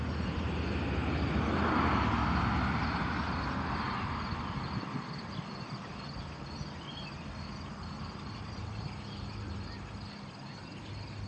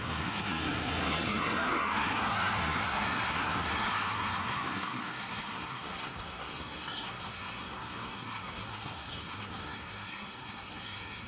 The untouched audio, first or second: first